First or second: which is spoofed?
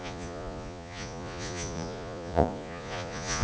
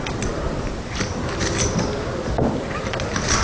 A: first